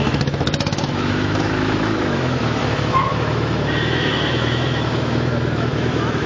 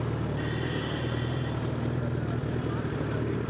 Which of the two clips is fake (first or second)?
first